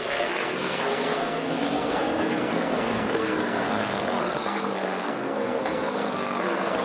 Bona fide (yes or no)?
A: no